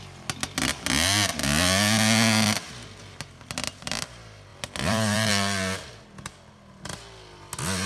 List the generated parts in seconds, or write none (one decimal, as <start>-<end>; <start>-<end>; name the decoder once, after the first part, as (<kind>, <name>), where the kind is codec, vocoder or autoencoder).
4.5-5.3 (vocoder, BigVGAN v2)